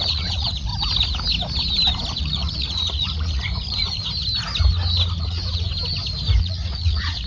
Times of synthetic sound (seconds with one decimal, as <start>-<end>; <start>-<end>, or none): 0.0-0.7; 2.2-4.0; 5.2-5.7; 6.4-7.3

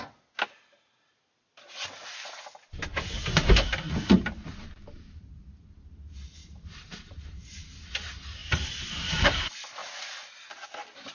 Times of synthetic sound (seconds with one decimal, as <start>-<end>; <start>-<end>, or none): 6.4-7.9; 8.4-9.4

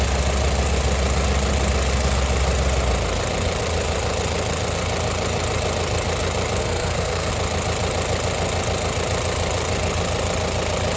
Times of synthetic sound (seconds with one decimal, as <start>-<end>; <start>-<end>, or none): 6.6-7.3

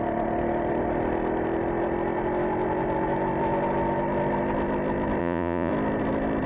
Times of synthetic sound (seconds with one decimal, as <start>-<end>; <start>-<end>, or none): 5.2-5.7

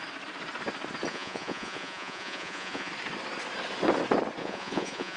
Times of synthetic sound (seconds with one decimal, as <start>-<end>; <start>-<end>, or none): 1.1-2.9; 4.4-5.2